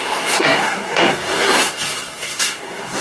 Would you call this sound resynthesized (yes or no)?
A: yes